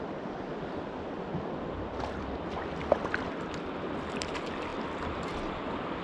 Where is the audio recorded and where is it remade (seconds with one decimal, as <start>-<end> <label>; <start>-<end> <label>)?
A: 0.0-6.0 recorded